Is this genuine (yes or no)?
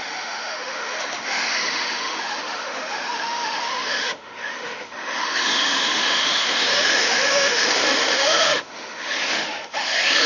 no